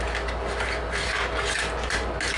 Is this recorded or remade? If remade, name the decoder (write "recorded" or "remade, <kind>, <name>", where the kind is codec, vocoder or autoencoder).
recorded